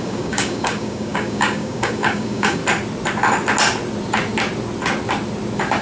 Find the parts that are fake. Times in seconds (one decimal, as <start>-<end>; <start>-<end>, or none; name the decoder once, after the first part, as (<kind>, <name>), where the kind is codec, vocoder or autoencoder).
0.0-2.6 (codec, DAC)